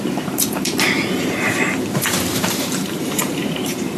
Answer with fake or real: fake